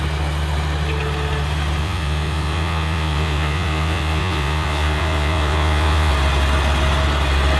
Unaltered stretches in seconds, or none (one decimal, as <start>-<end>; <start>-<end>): 0.0-1.8; 6.1-7.6